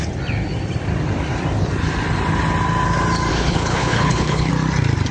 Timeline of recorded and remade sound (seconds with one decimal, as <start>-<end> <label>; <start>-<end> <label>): 0.0-3.3 recorded; 3.3-4.5 remade; 4.5-5.1 recorded